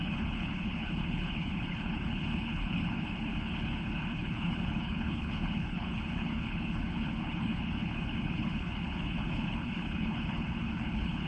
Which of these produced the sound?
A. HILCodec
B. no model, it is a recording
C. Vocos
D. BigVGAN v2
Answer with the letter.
A